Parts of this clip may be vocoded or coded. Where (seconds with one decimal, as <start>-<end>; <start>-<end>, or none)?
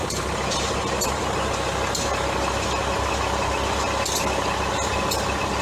none